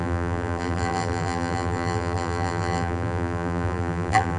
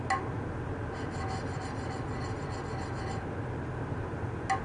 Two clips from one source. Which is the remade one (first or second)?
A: first